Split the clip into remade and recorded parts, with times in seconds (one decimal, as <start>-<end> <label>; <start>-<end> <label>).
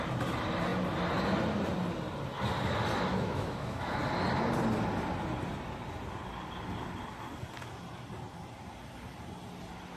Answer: 0.0-3.1 recorded; 3.1-4.0 remade; 4.0-10.0 recorded